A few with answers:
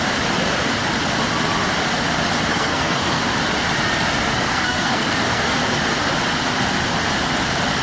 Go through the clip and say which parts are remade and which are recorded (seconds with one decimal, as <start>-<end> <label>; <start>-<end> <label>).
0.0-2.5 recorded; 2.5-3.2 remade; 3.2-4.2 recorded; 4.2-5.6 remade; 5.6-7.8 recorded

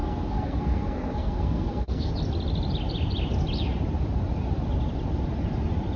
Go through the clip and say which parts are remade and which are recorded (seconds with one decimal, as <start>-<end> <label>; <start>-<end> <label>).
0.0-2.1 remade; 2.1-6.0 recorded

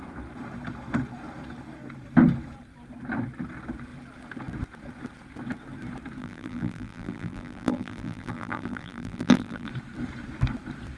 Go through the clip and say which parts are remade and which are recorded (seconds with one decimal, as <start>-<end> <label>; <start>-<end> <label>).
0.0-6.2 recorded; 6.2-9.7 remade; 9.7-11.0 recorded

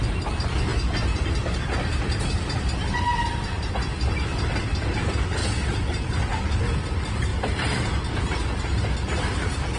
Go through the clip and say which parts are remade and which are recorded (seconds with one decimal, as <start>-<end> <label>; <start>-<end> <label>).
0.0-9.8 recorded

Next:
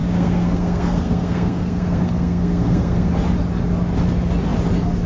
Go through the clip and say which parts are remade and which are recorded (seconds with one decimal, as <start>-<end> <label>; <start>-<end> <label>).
0.0-3.1 remade; 3.1-5.1 recorded